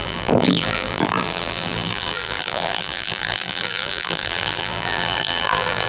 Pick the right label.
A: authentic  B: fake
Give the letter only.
B